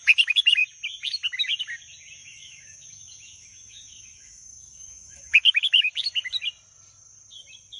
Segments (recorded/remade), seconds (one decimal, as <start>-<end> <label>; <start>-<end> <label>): 0.0-2.2 recorded; 2.2-5.9 remade; 5.9-7.8 recorded